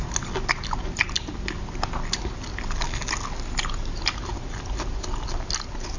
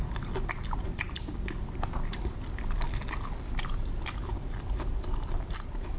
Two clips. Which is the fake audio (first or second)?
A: second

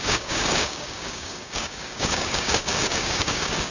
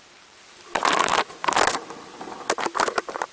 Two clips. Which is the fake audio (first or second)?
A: first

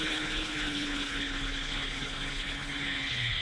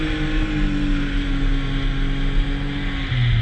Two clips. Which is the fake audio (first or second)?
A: first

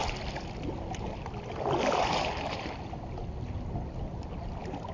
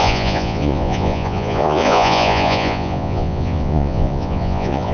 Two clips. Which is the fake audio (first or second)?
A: second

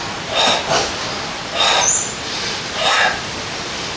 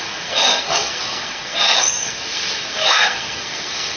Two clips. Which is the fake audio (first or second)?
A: second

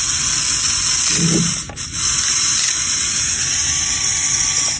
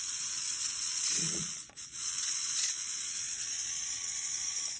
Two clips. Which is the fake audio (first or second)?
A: second